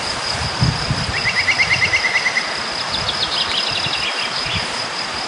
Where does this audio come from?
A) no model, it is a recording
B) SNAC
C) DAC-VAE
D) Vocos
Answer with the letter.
A